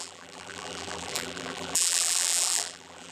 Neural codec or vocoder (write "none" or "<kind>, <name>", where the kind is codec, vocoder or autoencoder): vocoder, BigVGAN v2